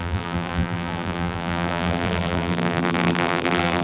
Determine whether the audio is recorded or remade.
remade